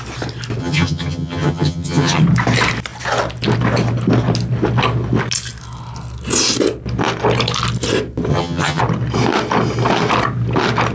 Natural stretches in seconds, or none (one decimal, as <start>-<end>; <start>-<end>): 0.0-0.6; 2.2-8.3; 8.8-10.9